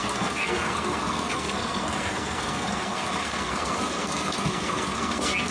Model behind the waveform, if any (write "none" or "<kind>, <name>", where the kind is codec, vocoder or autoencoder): codec, SNAC